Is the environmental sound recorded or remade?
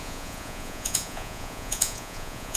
remade